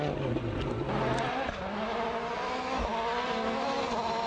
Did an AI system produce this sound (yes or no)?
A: no